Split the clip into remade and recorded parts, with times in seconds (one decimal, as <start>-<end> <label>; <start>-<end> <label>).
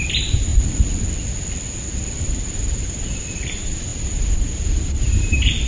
0.0-0.5 remade; 0.5-2.2 recorded; 2.2-5.7 remade